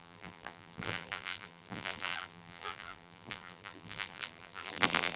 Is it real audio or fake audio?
fake